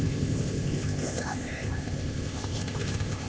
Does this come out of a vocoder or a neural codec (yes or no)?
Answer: yes